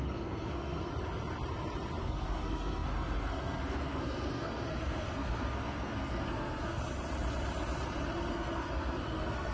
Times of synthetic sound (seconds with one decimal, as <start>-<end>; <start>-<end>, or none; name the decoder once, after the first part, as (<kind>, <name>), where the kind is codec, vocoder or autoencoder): 0.0-0.9 (codec, SNAC); 2.0-6.8; 8.3-9.5